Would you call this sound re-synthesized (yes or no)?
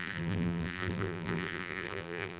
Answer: yes